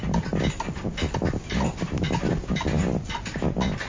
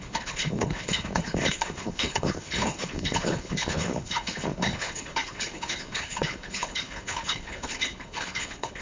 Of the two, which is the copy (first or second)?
second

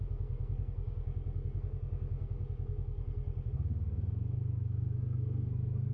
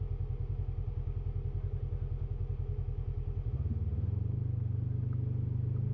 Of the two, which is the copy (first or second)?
first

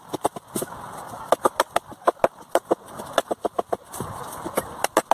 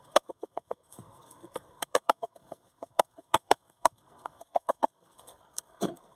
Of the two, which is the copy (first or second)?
second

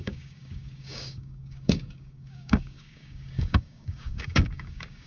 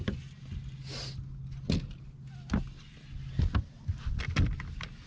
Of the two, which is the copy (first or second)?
first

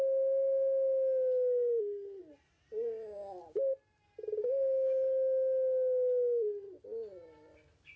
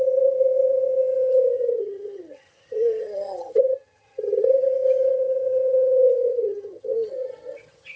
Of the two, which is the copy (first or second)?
second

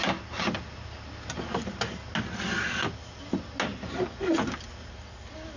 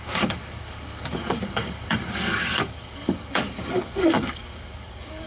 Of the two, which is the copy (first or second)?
second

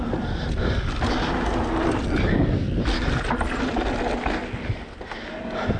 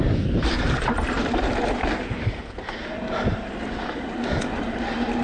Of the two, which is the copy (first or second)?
second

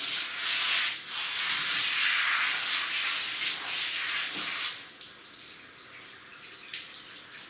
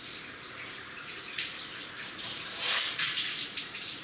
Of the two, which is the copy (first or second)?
second